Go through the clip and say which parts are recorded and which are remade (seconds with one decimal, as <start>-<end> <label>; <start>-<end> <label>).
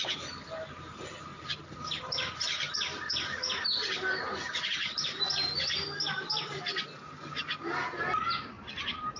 0.0-9.2 recorded